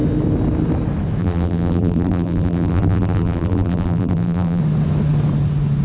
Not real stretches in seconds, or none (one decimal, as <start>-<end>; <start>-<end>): 1.2-4.6